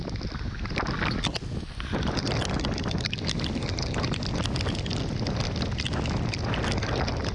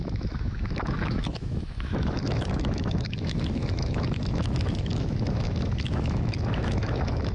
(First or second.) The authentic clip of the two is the first